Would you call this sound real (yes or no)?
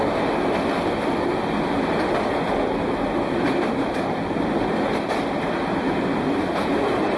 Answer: yes